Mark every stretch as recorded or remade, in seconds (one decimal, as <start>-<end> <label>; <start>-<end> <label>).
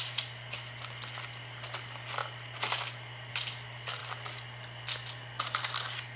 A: 0.0-6.2 recorded